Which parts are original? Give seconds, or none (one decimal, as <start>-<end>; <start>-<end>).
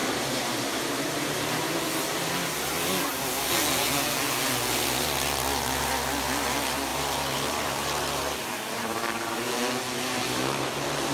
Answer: 1.9-6.9; 9.5-11.1